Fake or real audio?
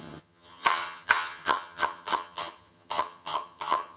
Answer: fake